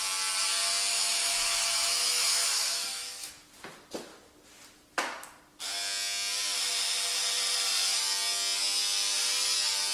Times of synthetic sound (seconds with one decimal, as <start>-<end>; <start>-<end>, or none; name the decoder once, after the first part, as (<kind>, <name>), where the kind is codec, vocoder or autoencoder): 0.9-3.3 (autoencoder, DAC-VAE)